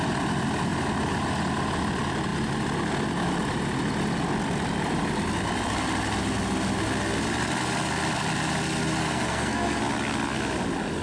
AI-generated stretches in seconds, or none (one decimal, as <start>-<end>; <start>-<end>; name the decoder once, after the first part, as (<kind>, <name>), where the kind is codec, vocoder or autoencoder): 9.0-9.8 (codec, SNAC)